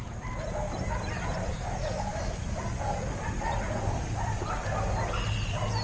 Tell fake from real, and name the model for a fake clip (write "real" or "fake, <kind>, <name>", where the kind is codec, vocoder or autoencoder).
real